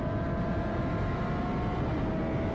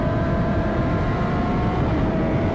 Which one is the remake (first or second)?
second